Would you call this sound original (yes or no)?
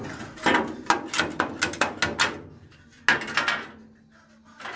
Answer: yes